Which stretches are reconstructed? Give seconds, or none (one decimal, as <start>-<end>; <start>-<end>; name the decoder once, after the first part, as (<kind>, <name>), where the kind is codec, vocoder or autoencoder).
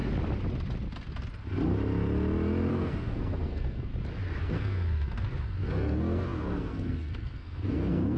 2.7-3.9 (codec, SNAC); 4.4-8.2